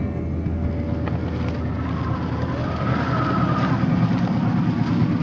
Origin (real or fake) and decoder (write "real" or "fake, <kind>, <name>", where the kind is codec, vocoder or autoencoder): real